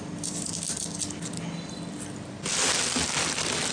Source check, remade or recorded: recorded